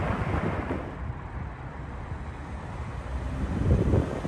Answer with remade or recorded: recorded